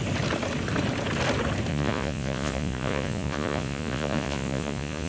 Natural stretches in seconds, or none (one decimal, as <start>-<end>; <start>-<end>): 0.0-1.7